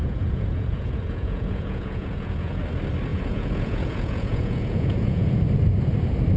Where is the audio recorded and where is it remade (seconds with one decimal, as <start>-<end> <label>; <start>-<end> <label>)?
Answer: 0.0-2.6 remade; 2.6-3.1 recorded; 3.1-5.4 remade; 5.4-6.4 recorded